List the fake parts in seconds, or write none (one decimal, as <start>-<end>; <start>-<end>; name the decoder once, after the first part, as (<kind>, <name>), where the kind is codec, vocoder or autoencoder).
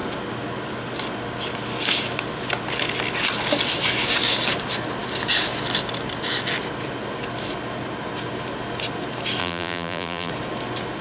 9.4-10.3 (vocoder, BigVGAN v2)